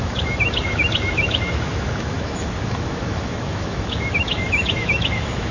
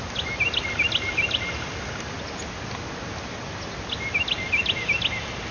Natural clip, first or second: second